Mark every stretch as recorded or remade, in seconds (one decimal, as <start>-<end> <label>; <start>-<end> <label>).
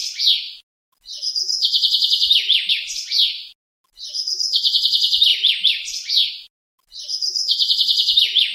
0.0-8.5 recorded